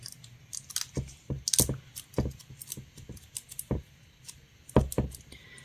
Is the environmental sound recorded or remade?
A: recorded